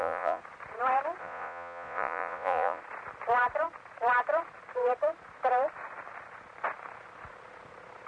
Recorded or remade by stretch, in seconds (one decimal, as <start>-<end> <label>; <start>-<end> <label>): 0.0-0.4 remade; 0.4-1.2 recorded; 1.2-2.8 remade; 2.8-8.1 recorded

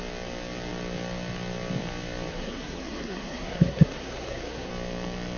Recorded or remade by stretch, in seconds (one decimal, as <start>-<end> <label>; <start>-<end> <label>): 0.0-2.3 recorded; 2.3-4.7 remade; 4.7-5.4 recorded

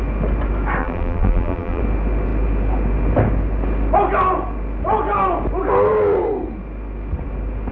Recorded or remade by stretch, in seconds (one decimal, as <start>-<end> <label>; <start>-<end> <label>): 0.0-0.8 recorded; 0.8-1.8 remade; 1.8-7.7 recorded

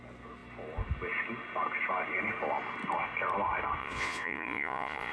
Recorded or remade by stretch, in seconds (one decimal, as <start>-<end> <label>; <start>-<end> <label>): 0.0-3.8 recorded; 3.8-5.1 remade

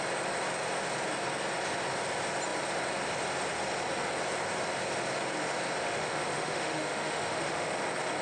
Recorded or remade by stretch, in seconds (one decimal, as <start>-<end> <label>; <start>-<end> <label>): 0.0-5.8 recorded; 5.8-7.7 remade; 7.7-8.2 recorded